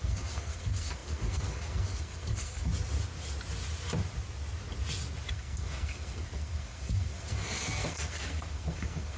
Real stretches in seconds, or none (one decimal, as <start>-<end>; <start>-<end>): 2.7-5.3